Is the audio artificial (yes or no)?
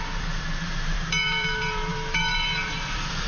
yes